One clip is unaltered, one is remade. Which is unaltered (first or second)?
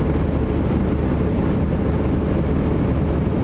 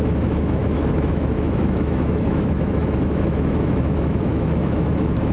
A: first